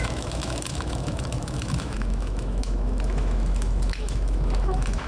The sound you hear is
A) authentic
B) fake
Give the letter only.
B